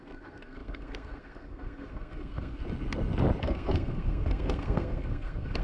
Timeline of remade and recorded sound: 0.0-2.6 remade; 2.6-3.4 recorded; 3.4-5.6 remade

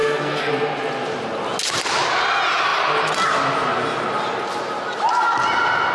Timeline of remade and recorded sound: 0.0-0.5 remade; 0.5-5.9 recorded